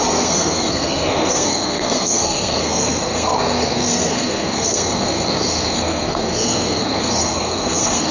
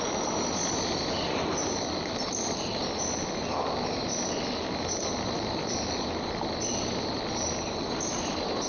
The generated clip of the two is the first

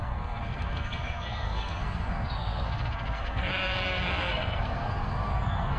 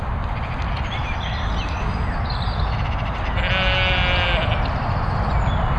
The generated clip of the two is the first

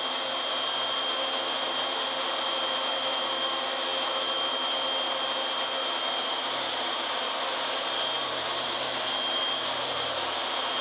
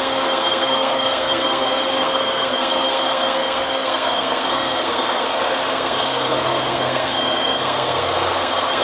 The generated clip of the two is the second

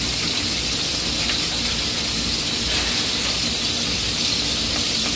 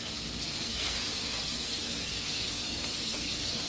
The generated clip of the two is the second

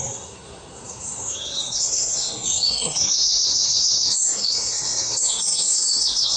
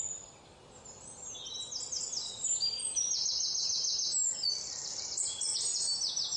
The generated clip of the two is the first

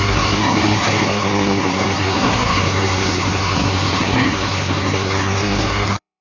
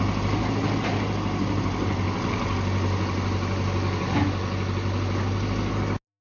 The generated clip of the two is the first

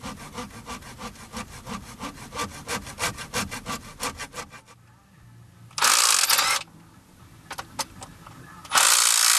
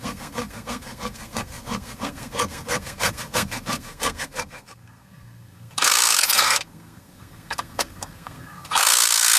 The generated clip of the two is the second